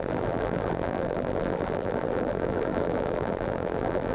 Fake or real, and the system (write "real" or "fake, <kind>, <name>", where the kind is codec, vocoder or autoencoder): fake, vocoder, BigVGAN v2